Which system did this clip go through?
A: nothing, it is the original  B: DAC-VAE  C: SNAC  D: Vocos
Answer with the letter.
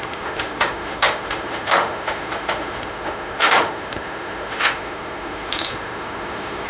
B